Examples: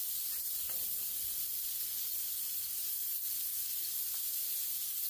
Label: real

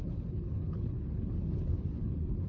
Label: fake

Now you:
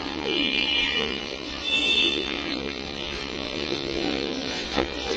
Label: fake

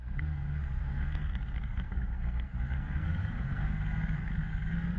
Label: fake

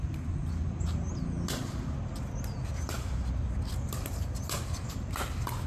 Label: real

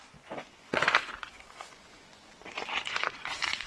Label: fake